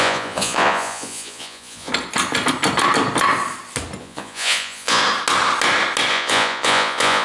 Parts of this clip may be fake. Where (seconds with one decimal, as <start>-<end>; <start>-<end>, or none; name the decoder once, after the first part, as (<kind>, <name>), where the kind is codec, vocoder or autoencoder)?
0.0-1.9 (vocoder, Vocos); 4.0-5.0; 6.1-7.2